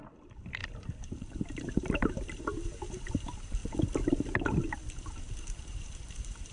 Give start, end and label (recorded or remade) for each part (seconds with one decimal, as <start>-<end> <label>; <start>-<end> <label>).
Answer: 0.0-3.6 remade; 3.6-4.7 recorded; 4.7-6.5 remade